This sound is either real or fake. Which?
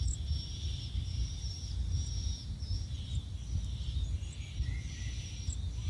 real